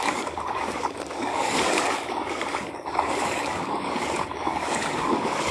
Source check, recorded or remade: remade